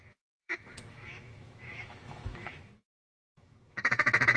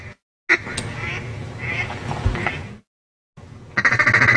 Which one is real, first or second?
second